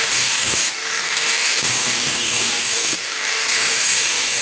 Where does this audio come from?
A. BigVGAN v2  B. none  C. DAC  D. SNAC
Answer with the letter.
C